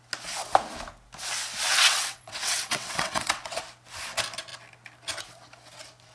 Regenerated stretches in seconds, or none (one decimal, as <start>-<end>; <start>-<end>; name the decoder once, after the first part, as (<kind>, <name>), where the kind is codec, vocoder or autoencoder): 1.7-3.6 (vocoder, WaveNeXt)